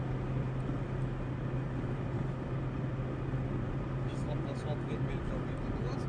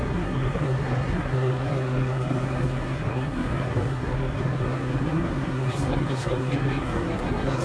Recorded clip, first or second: first